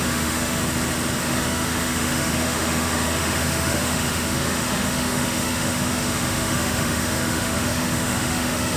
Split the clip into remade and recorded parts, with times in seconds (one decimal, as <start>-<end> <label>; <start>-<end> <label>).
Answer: 0.0-0.6 remade; 0.6-1.2 recorded; 1.2-8.8 remade